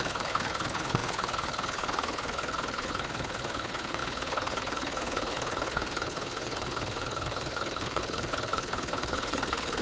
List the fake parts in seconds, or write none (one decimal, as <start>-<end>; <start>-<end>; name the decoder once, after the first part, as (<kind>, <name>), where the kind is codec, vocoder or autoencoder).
0.0-9.8 (codec, HILCodec)